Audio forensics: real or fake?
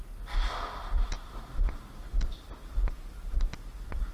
real